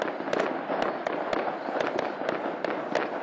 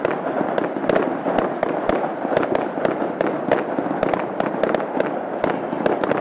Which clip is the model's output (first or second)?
second